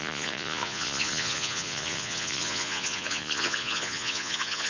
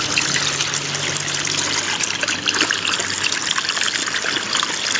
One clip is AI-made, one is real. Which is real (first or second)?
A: second